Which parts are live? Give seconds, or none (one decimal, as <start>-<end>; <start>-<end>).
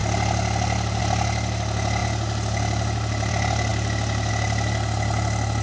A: 0.0-5.6